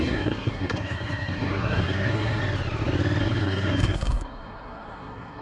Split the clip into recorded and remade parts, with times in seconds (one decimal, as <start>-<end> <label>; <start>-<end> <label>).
0.0-2.4 remade; 2.4-3.2 recorded; 3.2-5.4 remade